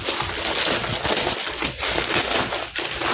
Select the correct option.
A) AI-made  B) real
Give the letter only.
B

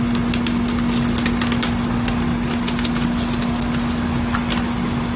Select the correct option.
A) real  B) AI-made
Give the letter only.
A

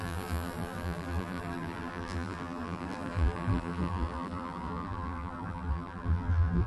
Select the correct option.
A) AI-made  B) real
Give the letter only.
A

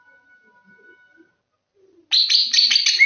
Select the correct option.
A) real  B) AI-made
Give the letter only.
A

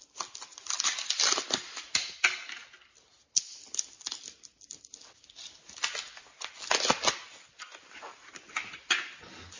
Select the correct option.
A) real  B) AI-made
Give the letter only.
A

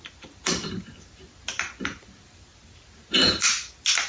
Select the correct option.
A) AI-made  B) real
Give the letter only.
B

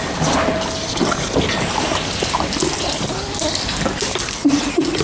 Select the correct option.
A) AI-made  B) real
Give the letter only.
A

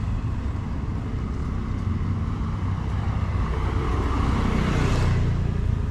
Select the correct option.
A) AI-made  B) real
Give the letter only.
B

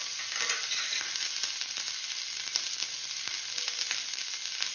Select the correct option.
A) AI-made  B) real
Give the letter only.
B